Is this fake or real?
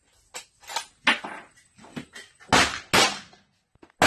real